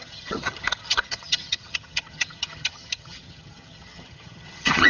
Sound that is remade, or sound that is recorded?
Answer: remade